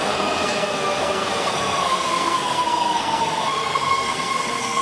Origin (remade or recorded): remade